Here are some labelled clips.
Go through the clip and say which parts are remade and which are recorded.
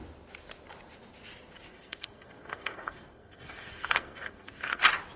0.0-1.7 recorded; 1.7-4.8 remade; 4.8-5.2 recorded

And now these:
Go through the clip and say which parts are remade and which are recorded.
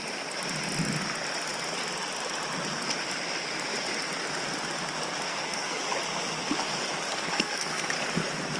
0.0-5.3 recorded; 5.3-5.8 remade; 5.8-7.1 recorded; 7.1-7.9 remade; 7.9-8.6 recorded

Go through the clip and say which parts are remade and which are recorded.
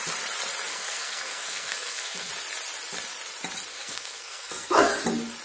0.0-0.7 recorded; 0.7-2.3 remade; 2.3-3.7 recorded; 3.7-4.9 remade; 4.9-5.4 recorded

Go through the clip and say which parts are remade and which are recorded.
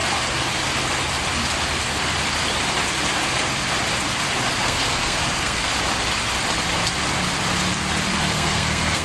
0.0-4.6 recorded; 4.6-5.7 remade; 5.7-8.1 recorded; 8.1-9.0 remade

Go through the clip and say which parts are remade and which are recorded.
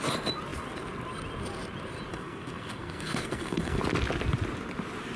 0.0-2.1 recorded; 2.1-3.8 remade; 3.8-5.2 recorded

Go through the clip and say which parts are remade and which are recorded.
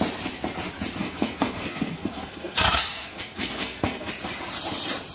0.0-1.0 recorded; 1.0-4.1 remade; 4.1-5.1 recorded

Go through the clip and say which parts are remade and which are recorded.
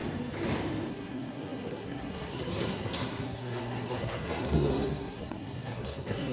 0.0-0.9 recorded; 0.9-6.3 remade